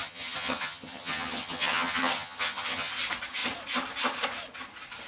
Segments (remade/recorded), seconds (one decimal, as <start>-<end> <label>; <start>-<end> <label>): 0.0-2.9 remade; 2.9-5.1 recorded